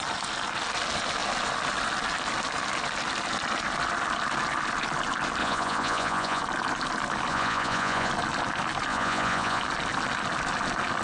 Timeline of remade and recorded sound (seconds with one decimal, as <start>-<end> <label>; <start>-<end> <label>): 0.0-5.4 recorded; 5.4-6.4 remade; 6.4-7.3 recorded; 7.3-8.1 remade; 8.1-8.9 recorded; 8.9-9.6 remade; 9.6-11.0 recorded